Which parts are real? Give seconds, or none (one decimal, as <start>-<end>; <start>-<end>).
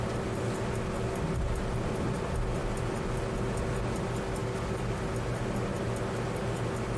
0.0-4.4; 5.0-7.0